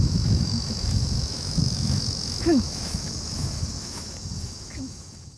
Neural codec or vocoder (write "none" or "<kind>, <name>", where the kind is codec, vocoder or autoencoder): autoencoder, DAC-VAE